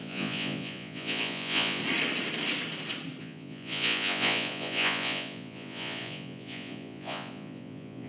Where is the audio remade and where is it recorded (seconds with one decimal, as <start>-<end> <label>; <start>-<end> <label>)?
0.0-1.8 remade; 1.8-3.2 recorded; 3.2-8.1 remade

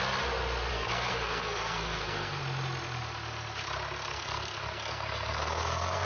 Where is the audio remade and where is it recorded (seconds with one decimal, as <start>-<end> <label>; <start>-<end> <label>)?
0.0-0.7 recorded; 0.7-2.4 remade; 2.4-4.1 recorded; 4.1-6.0 remade

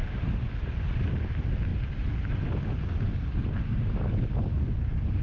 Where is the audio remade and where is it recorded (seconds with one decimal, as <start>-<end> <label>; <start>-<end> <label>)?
0.0-5.2 recorded

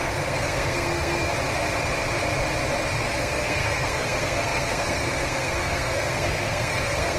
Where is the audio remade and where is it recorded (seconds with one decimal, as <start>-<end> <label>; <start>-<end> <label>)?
0.0-1.3 remade; 1.3-3.0 recorded; 3.0-7.2 remade

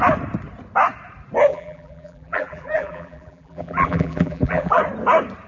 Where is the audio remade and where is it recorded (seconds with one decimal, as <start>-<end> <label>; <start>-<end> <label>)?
0.0-1.5 recorded; 1.5-4.8 remade; 4.8-5.5 recorded

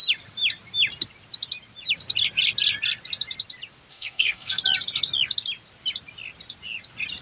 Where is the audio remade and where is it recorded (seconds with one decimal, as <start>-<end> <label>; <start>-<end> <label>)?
0.0-3.9 recorded; 3.9-4.6 remade; 4.6-7.2 recorded

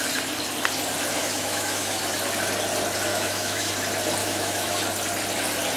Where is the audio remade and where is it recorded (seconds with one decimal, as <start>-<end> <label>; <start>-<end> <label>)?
0.0-1.2 recorded; 1.2-2.0 remade; 2.0-3.1 recorded; 3.1-3.7 remade; 3.7-4.2 recorded; 4.2-4.8 remade; 4.8-5.8 recorded

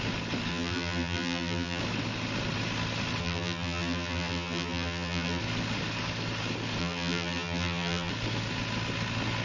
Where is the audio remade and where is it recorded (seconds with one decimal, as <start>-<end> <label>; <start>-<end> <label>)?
0.0-0.5 recorded; 0.5-1.8 remade; 1.8-3.2 recorded; 3.2-5.4 remade; 5.4-6.8 recorded; 6.8-8.1 remade; 8.1-9.4 recorded